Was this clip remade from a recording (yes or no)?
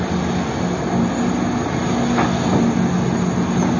no